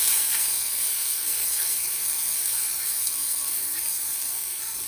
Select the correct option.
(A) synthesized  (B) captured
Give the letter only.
A